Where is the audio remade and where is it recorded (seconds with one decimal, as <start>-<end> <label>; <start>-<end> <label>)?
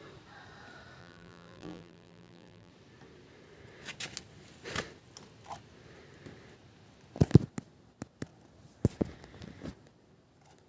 0.0-1.0 recorded; 1.0-2.7 remade; 2.7-10.7 recorded